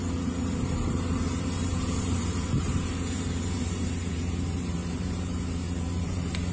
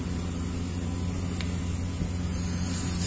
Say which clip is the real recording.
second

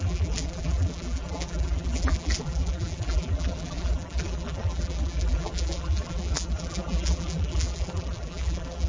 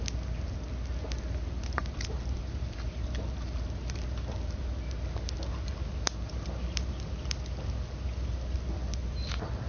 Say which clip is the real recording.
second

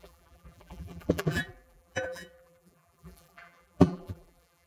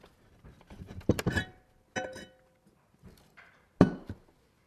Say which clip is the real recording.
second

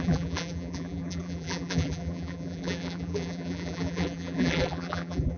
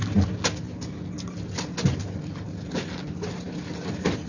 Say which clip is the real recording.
second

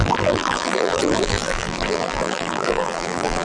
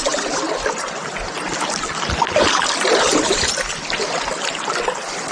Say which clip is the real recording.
second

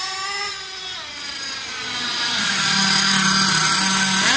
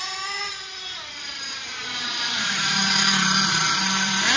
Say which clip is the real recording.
first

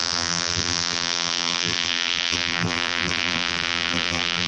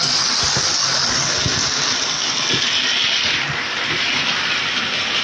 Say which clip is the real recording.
second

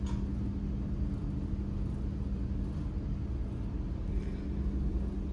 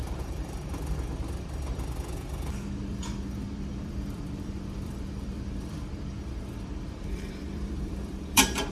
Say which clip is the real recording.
first